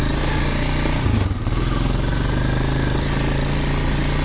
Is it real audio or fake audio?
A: real